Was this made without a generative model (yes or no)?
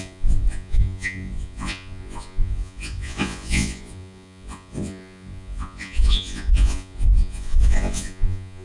no